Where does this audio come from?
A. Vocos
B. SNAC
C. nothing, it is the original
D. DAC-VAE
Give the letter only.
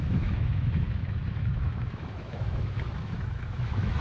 D